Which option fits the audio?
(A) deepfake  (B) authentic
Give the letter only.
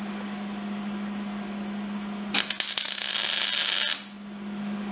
B